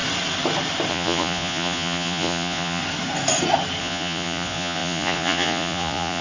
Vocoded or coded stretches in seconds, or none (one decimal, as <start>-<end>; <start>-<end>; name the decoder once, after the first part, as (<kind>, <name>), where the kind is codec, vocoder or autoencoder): 0.9-2.8 (vocoder, Vocos); 3.8-6.2